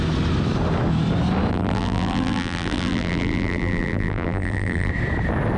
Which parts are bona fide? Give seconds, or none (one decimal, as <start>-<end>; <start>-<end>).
0.0-1.5; 4.9-5.6